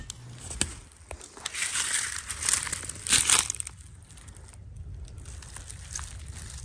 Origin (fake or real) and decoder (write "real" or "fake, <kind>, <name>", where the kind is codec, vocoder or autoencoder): real